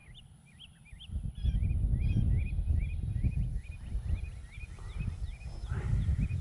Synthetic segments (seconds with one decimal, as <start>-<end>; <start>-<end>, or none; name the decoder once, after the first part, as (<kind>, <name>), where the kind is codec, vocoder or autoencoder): none